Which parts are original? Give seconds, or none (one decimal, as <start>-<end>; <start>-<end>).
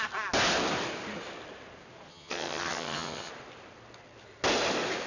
0.0-2.1; 3.3-5.1